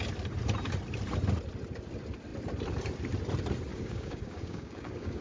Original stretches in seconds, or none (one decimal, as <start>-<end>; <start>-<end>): 0.0-3.7